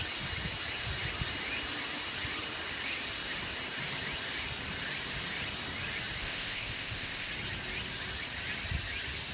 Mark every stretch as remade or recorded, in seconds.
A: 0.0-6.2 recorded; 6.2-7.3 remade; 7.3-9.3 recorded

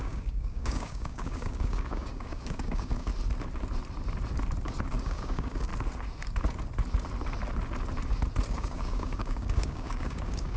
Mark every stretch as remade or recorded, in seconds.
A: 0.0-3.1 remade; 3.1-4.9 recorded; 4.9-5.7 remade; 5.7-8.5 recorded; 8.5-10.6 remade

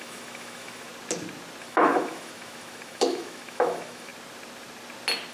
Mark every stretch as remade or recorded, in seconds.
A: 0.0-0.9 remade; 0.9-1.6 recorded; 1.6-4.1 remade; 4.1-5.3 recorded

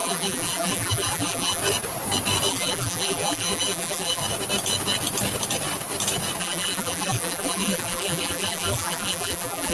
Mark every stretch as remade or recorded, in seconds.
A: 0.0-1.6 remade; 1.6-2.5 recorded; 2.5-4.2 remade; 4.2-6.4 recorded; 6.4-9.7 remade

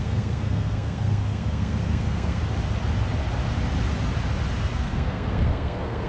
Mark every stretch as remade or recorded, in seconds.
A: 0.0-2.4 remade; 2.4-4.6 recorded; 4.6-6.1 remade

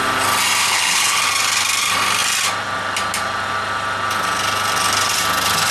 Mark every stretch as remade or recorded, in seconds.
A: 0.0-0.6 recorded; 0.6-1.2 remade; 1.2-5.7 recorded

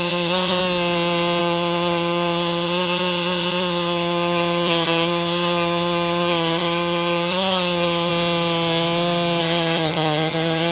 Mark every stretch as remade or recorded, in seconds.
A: 0.0-0.6 remade; 0.6-1.4 recorded; 1.4-8.1 remade; 8.1-9.4 recorded; 9.4-10.7 remade